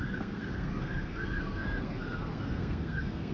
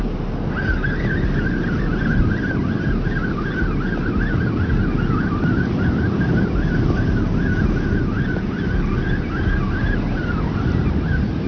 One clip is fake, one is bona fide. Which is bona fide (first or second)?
second